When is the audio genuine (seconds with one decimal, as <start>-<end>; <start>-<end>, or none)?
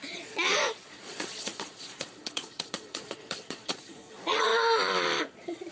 4.5-5.2